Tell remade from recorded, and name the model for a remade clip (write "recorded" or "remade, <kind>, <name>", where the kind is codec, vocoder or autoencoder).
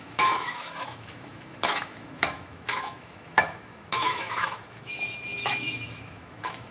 remade, autoencoder, DAC-VAE